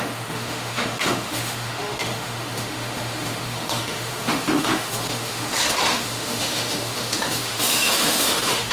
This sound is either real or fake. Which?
fake